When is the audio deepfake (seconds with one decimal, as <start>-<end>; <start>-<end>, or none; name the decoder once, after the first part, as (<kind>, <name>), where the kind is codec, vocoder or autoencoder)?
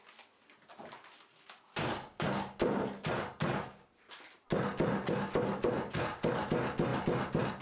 none